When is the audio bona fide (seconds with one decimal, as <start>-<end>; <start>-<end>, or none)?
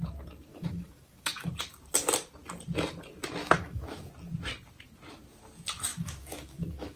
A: 0.0-0.5; 1.5-3.4; 4.1-5.9